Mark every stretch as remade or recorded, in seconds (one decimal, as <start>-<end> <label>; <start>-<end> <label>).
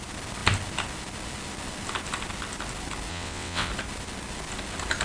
0.0-3.1 recorded; 3.1-3.7 remade; 3.7-5.0 recorded